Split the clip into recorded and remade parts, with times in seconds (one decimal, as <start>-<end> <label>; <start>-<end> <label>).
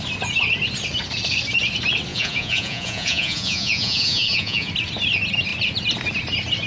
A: 0.0-2.1 recorded; 2.1-4.7 remade; 4.7-6.7 recorded